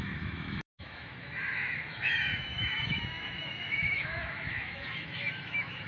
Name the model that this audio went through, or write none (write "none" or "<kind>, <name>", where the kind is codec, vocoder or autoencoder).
autoencoder, DAC-VAE